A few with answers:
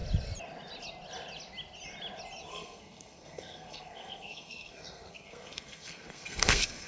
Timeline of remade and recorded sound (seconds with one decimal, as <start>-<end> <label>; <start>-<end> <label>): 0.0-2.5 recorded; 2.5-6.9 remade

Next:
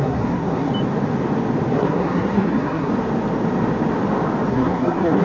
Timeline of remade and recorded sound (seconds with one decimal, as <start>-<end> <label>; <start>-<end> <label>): 0.0-0.7 remade; 0.7-1.7 recorded; 1.7-2.9 remade; 2.9-4.5 recorded; 4.5-5.2 remade

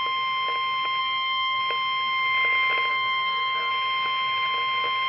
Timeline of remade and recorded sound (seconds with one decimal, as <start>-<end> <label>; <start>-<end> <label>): 0.0-1.0 recorded; 1.0-1.6 remade; 1.6-2.9 recorded; 2.9-3.7 remade; 3.7-5.1 recorded

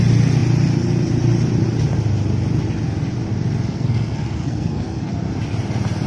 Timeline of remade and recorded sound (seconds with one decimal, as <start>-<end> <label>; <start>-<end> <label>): 0.0-3.7 recorded; 3.7-5.1 remade; 5.1-6.1 recorded

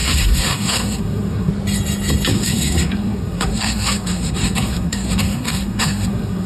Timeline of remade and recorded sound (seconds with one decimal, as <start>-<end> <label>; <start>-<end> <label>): 0.0-1.5 remade; 1.5-2.3 recorded; 2.3-6.5 remade